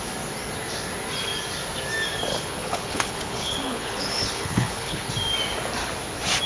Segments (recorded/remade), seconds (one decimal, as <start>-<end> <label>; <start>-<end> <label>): 0.0-2.3 recorded; 2.3-5.1 remade; 5.1-6.5 recorded